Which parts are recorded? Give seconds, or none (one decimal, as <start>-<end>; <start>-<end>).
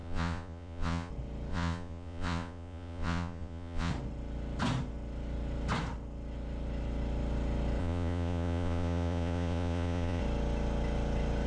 1.1-1.5; 3.9-7.8; 10.2-11.5